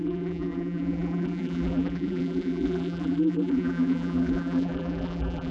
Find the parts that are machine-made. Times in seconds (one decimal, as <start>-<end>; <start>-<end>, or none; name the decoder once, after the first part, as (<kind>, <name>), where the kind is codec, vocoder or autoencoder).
0.0-5.5 (vocoder, BigVGAN v2)